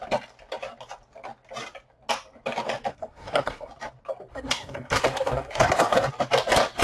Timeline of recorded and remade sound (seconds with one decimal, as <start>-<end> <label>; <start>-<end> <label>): 0.0-2.9 recorded; 2.9-3.7 remade; 3.7-4.3 recorded; 4.3-6.1 remade; 6.1-6.8 recorded